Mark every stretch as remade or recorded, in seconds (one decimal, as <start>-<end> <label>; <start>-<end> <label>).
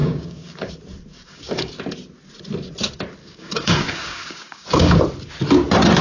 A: 0.0-0.7 remade; 0.7-1.1 recorded; 1.1-1.7 remade; 1.7-3.2 recorded; 3.2-5.0 remade; 5.0-6.0 recorded